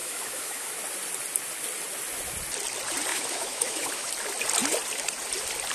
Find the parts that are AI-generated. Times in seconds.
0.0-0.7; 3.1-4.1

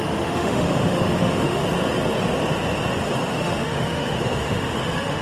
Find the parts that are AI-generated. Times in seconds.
0.0-1.6; 3.3-5.2

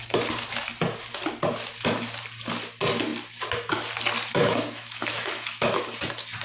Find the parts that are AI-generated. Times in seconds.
4.3-5.8

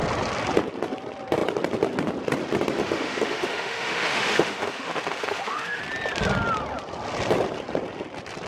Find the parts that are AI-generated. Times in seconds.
2.8-5.8

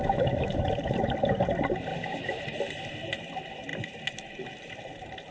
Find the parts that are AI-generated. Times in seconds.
0.0-0.6; 1.9-2.4

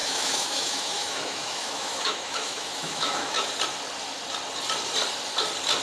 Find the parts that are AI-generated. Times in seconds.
0.0-3.5

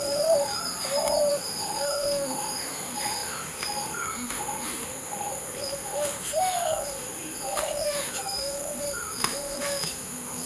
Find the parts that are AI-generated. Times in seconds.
0.0-0.6; 1.3-10.5